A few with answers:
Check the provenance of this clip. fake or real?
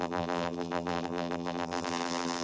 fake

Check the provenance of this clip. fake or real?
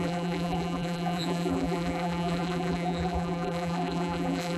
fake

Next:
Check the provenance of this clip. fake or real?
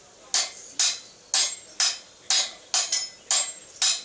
real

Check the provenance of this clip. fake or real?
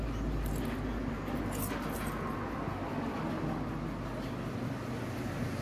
real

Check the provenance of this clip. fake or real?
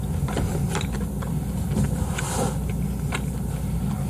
real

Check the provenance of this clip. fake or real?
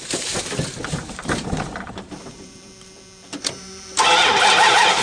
fake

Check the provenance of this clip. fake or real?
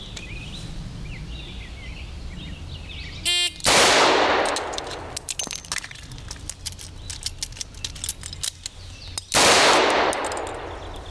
real